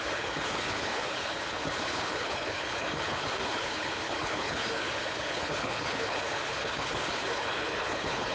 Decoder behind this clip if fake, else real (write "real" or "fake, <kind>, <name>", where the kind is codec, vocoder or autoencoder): fake, codec, HILCodec